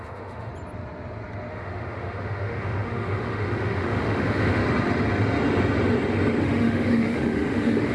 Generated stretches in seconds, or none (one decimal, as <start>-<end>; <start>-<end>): 0.0-0.5; 1.5-4.6; 6.4-7.9